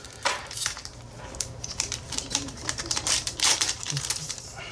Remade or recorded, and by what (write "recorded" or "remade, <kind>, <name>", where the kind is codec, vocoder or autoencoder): remade, vocoder, BigVGAN v2